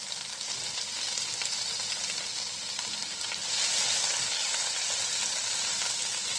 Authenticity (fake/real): real